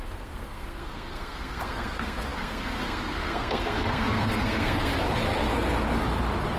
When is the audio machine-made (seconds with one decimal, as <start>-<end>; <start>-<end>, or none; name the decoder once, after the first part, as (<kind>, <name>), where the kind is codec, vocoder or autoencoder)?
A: 0.0-4.9 (codec, SNAC)